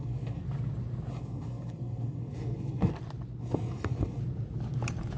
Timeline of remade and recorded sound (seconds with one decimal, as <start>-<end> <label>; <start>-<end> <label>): 0.0-0.4 remade; 0.4-1.1 recorded; 1.1-2.9 remade; 2.9-3.4 recorded; 3.4-4.2 remade; 4.2-5.2 recorded